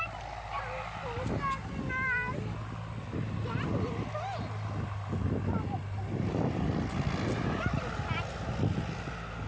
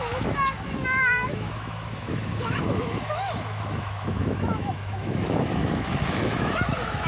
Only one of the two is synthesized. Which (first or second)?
second